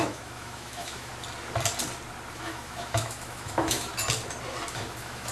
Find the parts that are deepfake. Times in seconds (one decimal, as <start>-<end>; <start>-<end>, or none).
0.0-1.1; 2.3-3.9; 4.7-5.3